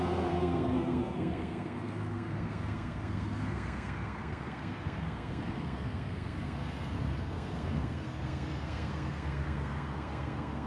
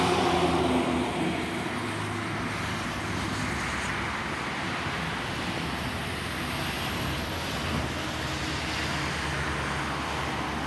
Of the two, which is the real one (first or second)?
second